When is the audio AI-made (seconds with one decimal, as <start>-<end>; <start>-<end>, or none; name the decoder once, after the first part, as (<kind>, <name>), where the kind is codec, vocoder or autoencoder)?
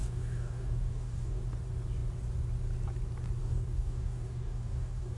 0.0-1.4 (codec, DAC); 3.4-5.2